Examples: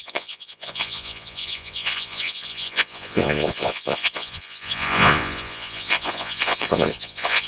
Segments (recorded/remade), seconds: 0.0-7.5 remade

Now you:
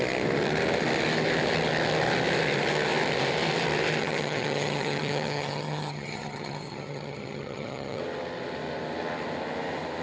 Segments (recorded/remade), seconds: 0.0-4.0 recorded; 4.0-8.0 remade; 8.0-10.0 recorded

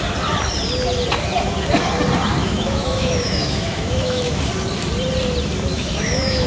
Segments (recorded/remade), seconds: 0.0-2.4 recorded; 2.4-4.4 remade; 4.4-5.7 recorded; 5.7-6.5 remade

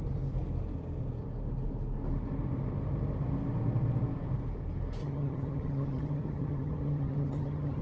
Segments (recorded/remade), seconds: 0.0-5.0 recorded; 5.0-7.8 remade

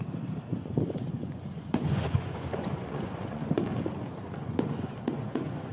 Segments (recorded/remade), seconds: 0.0-0.5 recorded; 0.5-3.6 remade; 3.6-4.2 recorded; 4.2-5.7 remade